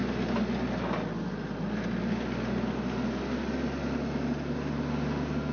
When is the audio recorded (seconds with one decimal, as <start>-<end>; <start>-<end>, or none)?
0.0-5.5